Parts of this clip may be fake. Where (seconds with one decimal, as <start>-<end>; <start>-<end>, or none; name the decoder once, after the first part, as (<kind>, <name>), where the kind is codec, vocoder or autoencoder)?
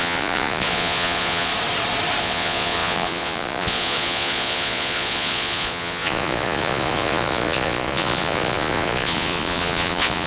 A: 0.0-1.5 (vocoder, Vocos); 2.2-10.3